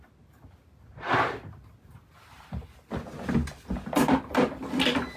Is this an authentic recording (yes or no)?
yes